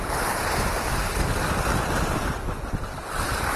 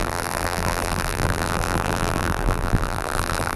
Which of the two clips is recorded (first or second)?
first